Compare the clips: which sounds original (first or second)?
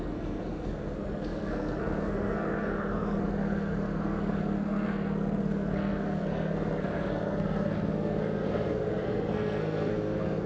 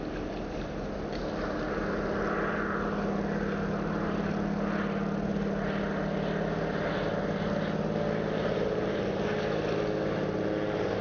second